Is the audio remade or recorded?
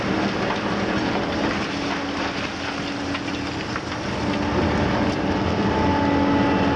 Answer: recorded